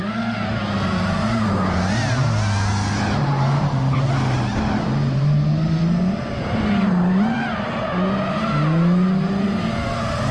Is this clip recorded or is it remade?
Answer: recorded